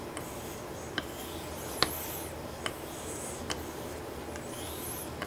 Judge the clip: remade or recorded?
recorded